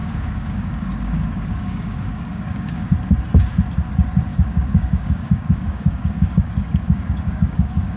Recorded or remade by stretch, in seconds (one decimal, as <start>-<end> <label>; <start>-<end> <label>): 0.0-3.1 remade; 3.1-4.3 recorded; 4.3-8.0 remade